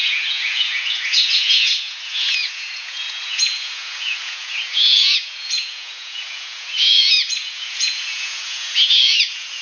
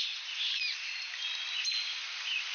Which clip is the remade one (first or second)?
first